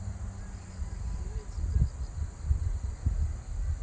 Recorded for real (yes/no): yes